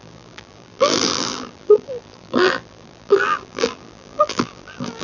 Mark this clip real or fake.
fake